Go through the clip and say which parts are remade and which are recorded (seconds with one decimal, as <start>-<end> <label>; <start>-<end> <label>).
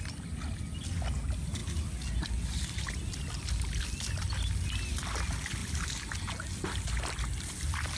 0.0-8.0 recorded